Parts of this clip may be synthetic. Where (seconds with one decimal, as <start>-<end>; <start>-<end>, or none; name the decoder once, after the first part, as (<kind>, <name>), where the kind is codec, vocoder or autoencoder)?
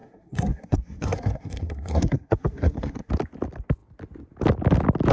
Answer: 0.0-3.1 (codec, SNAC)